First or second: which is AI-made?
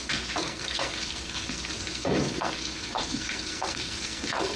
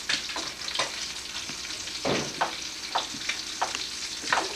first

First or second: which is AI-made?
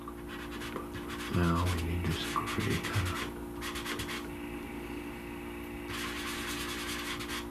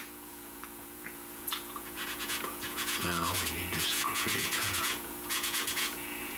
second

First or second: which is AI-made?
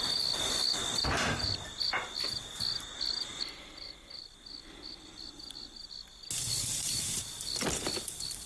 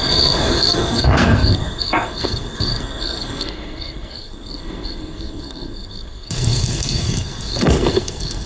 second